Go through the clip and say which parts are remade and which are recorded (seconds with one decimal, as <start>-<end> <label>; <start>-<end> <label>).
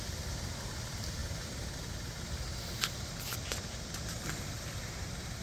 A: 0.0-5.4 recorded